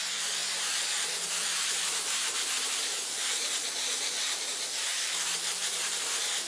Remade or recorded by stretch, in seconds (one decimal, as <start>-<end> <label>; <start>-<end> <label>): 0.0-6.5 remade